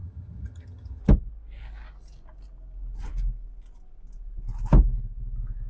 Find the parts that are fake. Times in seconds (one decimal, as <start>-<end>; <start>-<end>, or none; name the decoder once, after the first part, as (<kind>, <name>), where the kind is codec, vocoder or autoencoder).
0.0-1.0 (vocoder, HiFi-GAN)